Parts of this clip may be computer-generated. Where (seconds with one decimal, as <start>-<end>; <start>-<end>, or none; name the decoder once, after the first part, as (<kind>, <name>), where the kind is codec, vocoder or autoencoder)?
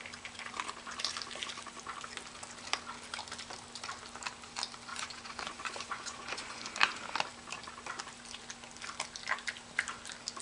4.9-6.7 (vocoder, Vocos)